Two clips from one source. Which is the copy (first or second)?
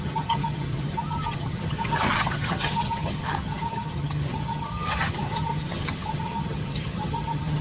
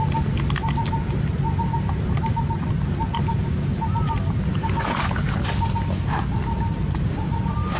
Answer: first